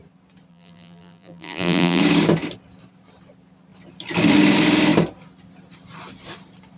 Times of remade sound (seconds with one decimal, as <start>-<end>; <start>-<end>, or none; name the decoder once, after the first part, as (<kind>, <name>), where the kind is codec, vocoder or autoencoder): 0.5-2.0 (vocoder, BigVGAN v2)